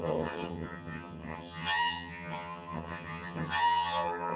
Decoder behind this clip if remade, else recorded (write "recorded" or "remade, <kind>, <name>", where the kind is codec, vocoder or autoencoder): remade, vocoder, HiFi-GAN